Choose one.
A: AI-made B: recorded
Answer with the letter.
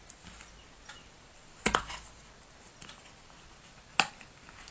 B